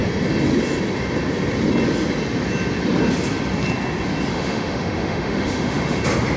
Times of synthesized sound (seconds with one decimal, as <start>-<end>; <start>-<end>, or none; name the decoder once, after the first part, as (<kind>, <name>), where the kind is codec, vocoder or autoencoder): 4.3-6.0 (autoencoder, DAC-VAE)